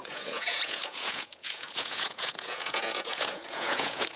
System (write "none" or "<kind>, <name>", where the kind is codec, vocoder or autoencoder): vocoder, Vocos